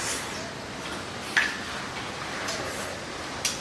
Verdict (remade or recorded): recorded